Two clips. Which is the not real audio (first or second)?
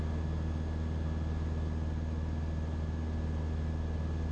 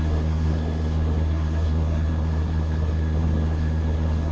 second